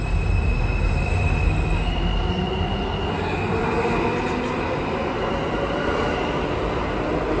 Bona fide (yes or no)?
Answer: yes